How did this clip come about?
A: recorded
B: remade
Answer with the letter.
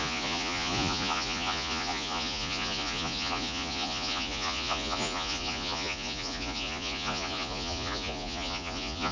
B